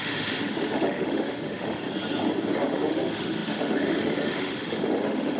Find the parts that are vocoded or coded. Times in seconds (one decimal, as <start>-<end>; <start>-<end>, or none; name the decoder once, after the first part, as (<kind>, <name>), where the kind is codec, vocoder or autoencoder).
0.0-1.8 (autoencoder, DAC-VAE); 2.6-5.4